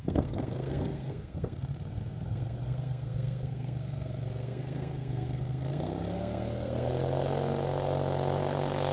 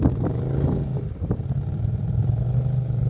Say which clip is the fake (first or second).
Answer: first